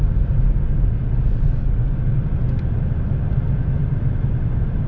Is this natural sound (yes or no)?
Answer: yes